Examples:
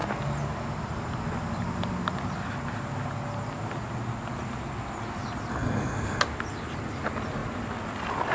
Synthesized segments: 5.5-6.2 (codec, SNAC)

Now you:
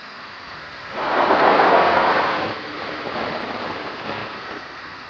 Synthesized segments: 0.0-2.7 (codec, SNAC); 3.6-5.1

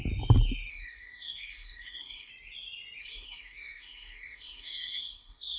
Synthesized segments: 0.7-2.3 (codec, SNAC); 3.0-5.6

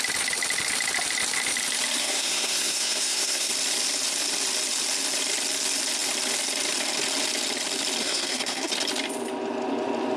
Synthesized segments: 2.0-3.5 (codec, SNAC); 8.0-8.7

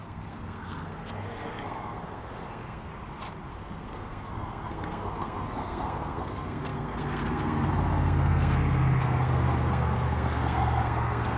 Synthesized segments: 0.0-2.9 (codec, SNAC); 3.5-11.4

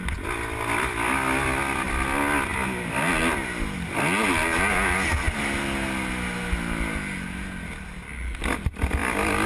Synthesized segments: none

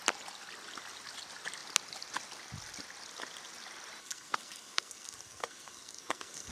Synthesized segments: 4.0-6.5 (codec, SNAC)

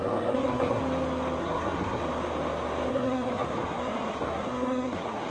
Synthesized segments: 0.0-0.8 (codec, SNAC); 1.4-2.0; 2.9-5.3